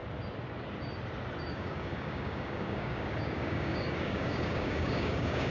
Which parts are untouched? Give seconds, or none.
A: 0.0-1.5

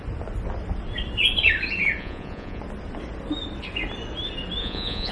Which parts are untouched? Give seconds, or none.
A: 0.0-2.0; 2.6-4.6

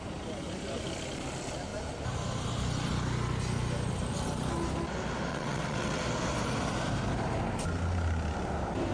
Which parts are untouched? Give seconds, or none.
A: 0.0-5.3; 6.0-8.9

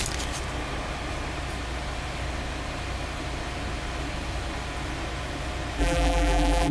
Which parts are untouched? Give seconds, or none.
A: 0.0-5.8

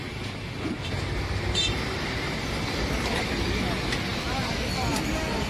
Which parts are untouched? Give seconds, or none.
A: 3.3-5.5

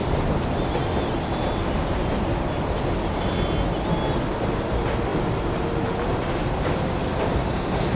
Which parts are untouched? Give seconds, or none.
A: 0.0-8.0

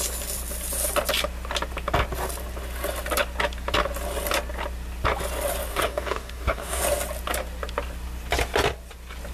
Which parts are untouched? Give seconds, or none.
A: 0.0-5.7; 6.8-9.3